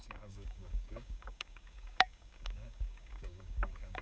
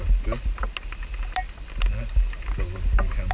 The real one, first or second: second